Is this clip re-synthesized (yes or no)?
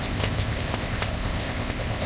yes